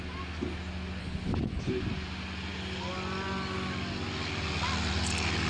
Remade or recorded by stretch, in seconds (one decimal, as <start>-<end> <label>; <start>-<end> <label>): 0.0-1.0 recorded; 1.0-1.6 remade; 1.6-5.5 recorded